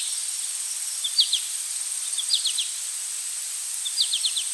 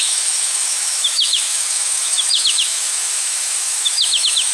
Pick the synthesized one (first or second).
second